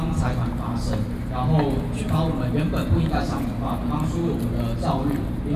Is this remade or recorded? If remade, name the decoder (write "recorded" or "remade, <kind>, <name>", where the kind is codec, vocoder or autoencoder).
recorded